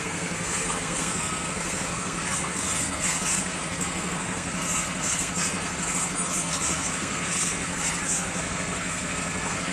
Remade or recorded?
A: remade